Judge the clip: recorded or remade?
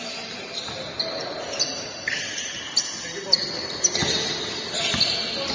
recorded